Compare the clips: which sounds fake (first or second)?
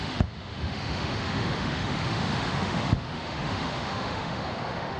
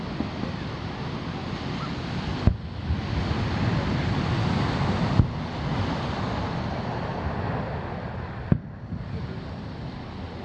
first